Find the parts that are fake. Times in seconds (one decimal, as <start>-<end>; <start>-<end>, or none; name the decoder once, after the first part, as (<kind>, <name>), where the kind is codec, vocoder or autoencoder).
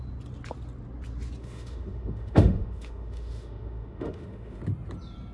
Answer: 1.4-4.6 (autoencoder, DAC-VAE)